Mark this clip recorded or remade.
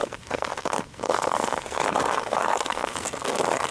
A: remade